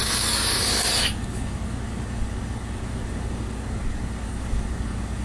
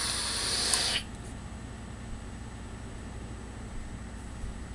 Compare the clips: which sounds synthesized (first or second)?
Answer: first